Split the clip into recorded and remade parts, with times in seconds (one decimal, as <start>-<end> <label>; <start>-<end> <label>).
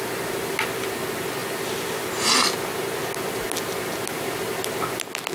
0.0-5.3 recorded